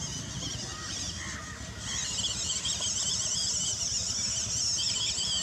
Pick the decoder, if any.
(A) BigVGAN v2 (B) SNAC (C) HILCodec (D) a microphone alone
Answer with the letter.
D